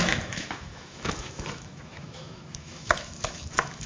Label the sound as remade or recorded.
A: remade